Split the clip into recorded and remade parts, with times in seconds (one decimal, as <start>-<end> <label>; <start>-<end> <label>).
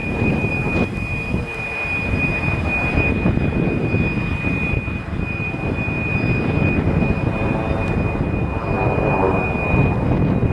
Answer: 0.0-0.5 remade; 0.5-10.5 recorded